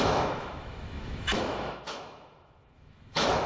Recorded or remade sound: remade